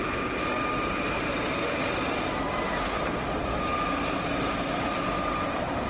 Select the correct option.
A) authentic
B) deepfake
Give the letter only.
A